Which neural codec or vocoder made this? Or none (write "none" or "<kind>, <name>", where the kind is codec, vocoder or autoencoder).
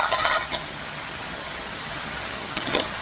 vocoder, HiFi-GAN